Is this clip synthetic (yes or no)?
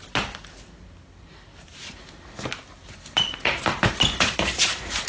no